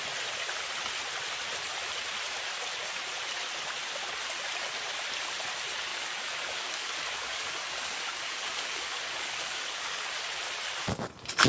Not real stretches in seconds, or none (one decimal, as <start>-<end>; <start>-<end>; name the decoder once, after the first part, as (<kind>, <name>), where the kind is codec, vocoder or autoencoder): 5.9-10.1 (codec, DAC)